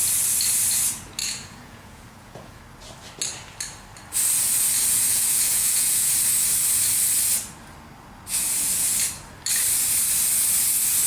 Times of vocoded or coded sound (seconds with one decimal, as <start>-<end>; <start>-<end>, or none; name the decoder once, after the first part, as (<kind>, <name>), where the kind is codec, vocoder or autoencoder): 1.2-2.6 (vocoder, Vocos); 5.1-6.1